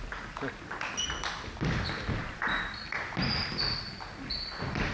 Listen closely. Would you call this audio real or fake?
real